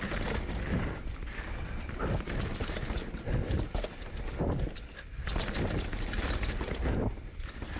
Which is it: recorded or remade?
recorded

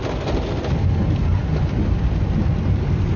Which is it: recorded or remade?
recorded